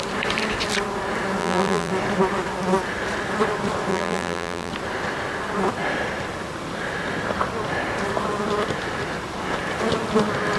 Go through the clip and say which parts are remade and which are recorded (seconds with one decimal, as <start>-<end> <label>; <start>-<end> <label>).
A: 0.0-1.4 recorded; 1.4-1.9 remade; 1.9-3.9 recorded; 3.9-4.7 remade; 4.7-10.6 recorded